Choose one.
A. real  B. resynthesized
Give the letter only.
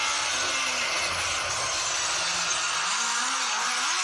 A